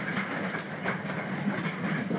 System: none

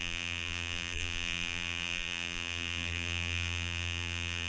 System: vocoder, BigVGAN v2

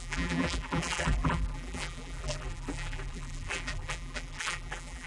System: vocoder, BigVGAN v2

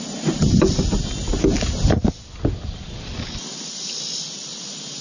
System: none